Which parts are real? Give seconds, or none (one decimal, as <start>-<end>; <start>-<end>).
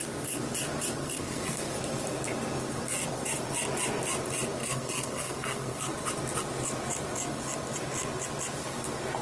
0.0-1.0; 1.6-4.6; 5.9-9.2